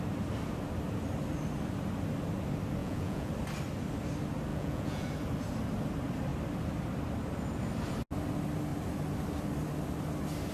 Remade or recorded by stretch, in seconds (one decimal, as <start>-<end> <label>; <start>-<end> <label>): 0.0-2.8 recorded; 2.8-3.3 remade; 3.3-4.5 recorded; 4.5-5.1 remade; 5.1-10.5 recorded